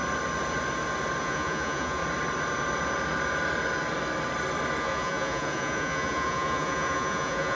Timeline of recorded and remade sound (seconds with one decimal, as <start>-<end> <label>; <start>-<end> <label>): 0.0-1.2 recorded; 1.2-2.0 remade; 2.0-4.8 recorded; 4.8-7.5 remade